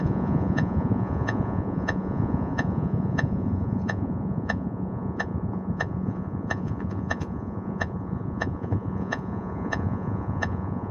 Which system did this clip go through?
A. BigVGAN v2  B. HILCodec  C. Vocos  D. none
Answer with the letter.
C